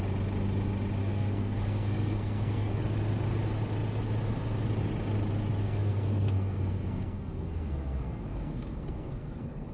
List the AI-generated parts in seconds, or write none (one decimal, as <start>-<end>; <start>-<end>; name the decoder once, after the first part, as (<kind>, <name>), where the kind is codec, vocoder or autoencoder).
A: 1.0-2.8 (codec, SNAC); 5.6-9.7